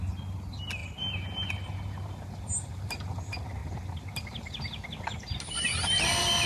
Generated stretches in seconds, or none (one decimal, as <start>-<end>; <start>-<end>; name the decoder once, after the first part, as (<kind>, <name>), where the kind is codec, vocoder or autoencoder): none